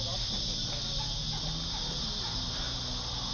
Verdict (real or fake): real